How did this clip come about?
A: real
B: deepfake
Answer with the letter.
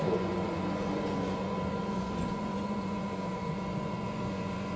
B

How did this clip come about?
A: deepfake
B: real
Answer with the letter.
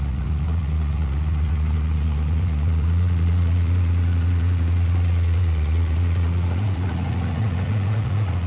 A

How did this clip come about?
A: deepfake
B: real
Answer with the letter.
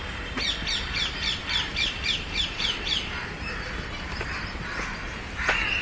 A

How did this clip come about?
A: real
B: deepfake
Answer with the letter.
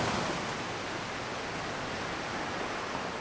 A